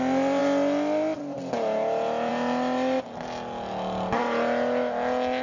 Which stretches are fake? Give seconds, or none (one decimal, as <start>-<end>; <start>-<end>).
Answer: none